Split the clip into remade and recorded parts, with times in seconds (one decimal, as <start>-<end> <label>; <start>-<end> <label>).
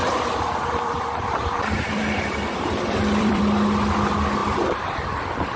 0.0-3.4 remade; 3.4-4.4 recorded; 4.4-5.6 remade